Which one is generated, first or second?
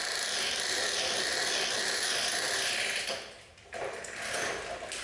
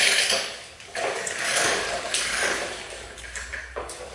second